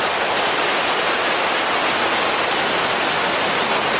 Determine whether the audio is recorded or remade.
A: recorded